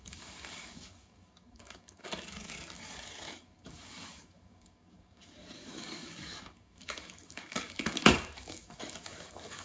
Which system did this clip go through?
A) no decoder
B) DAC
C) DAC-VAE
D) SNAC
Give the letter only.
B